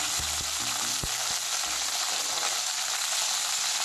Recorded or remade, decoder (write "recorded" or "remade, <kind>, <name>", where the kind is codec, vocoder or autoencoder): recorded